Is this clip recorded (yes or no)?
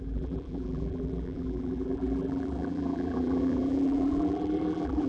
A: no